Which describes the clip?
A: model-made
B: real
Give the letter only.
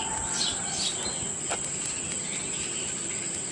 B